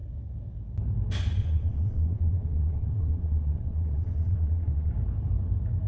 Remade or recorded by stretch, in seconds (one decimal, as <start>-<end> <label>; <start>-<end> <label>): 0.0-1.4 recorded; 1.4-4.9 remade; 4.9-5.9 recorded